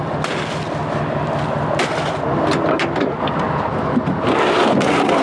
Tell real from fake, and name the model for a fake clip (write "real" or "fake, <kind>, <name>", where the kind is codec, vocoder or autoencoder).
real